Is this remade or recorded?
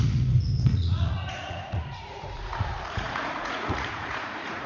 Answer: remade